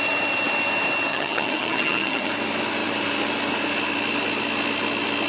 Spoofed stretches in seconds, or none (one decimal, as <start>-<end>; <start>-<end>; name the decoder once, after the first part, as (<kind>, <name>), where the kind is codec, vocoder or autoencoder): 1.1-2.3 (vocoder, HiFi-GAN)